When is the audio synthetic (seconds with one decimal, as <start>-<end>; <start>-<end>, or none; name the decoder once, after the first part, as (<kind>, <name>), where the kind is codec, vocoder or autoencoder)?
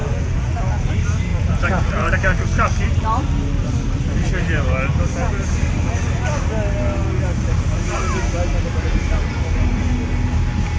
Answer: 0.0-0.9 (vocoder, Vocos); 1.3-2.1